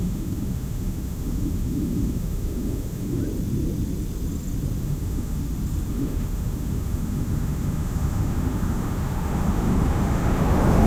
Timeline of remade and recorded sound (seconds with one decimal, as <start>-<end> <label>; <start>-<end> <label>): 0.0-3.2 remade; 3.2-4.8 recorded; 4.8-5.4 remade; 5.4-5.9 recorded; 5.9-10.9 remade